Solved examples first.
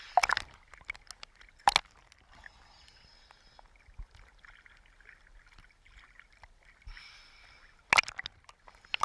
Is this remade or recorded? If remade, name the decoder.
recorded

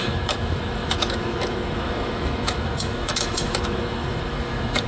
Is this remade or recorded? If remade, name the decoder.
remade, autoencoder, DAC-VAE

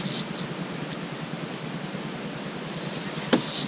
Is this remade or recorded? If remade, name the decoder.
recorded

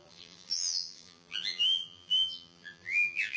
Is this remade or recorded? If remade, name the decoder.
remade, vocoder, BigVGAN v2